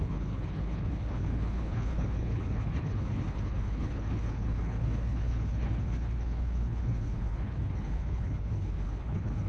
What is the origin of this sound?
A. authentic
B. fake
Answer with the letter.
B